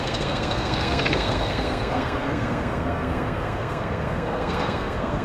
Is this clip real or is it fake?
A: fake